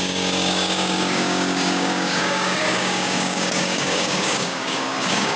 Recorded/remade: remade